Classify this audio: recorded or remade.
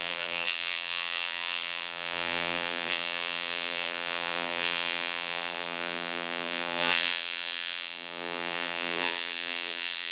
remade